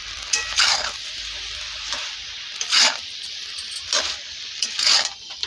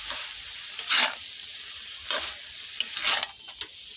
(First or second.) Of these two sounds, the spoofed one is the first